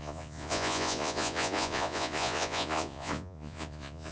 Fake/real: fake